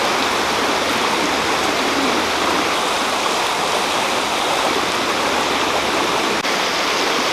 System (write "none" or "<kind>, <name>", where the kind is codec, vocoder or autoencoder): none